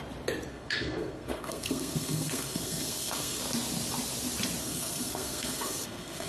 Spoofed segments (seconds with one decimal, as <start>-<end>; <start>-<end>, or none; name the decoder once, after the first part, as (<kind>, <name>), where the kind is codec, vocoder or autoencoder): 0.5-3.4 (codec, SNAC); 4.6-6.3